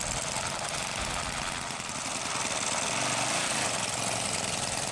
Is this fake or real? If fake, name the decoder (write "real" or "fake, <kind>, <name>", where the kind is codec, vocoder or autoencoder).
real